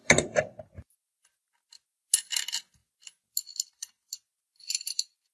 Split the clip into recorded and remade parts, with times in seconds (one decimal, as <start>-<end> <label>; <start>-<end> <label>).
0.0-5.3 recorded